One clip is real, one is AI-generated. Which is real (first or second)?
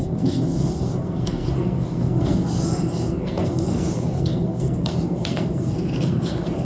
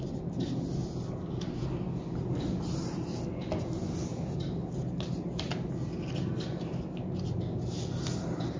second